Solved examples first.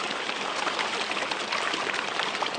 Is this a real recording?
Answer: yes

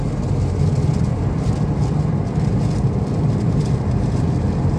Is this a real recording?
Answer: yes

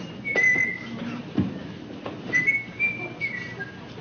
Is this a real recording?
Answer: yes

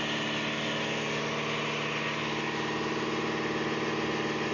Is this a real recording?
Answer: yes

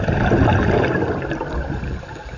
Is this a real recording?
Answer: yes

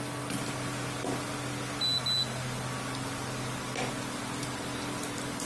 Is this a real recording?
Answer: yes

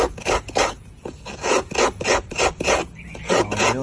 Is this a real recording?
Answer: no